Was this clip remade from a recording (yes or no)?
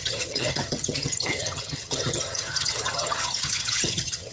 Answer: yes